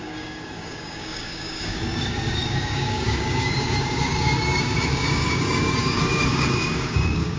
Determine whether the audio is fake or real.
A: fake